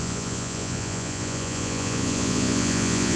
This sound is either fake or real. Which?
fake